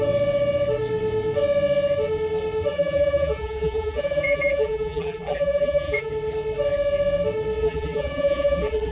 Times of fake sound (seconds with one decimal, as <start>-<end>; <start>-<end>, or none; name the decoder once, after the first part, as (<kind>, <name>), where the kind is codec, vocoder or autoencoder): 2.7-6.1 (vocoder, BigVGAN v2); 7.6-8.9